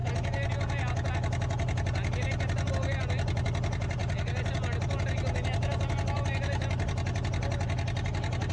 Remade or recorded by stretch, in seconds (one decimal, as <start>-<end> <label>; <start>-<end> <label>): 0.0-8.5 recorded